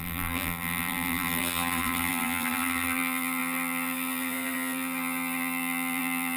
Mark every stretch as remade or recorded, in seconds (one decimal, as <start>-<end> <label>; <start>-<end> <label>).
0.0-6.4 remade